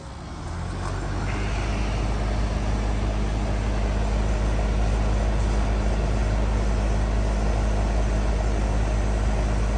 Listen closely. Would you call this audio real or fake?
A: real